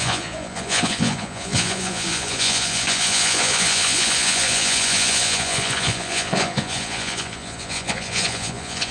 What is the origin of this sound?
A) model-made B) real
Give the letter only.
A